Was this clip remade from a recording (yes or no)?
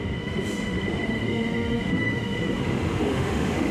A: yes